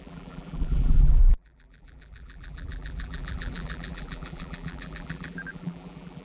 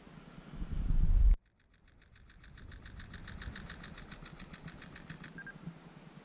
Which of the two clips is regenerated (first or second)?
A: first